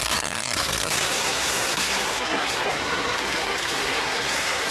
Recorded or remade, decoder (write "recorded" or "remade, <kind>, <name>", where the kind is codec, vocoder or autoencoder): remade, codec, SNAC